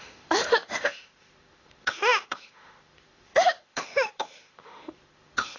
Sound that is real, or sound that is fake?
fake